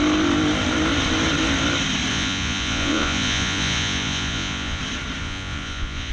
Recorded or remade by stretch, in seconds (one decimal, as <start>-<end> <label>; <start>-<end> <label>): 0.0-2.1 recorded; 2.1-4.8 remade; 4.8-5.2 recorded; 5.2-6.1 remade